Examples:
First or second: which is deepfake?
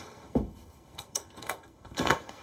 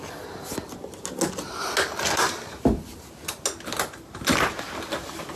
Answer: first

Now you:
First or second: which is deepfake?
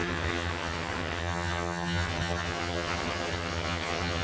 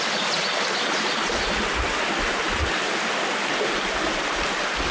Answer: first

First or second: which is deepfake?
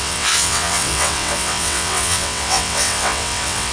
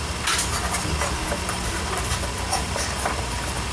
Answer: first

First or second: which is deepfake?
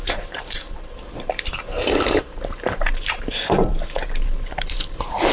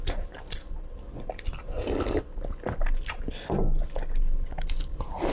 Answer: first